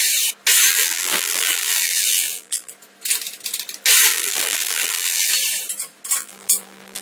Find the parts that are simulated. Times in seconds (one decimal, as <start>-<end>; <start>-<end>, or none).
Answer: 0.7-2.7; 4.1-5.3; 6.2-7.0